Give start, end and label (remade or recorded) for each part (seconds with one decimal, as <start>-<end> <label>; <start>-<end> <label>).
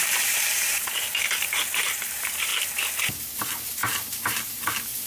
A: 0.0-2.5 remade; 2.5-3.0 recorded; 3.0-5.1 remade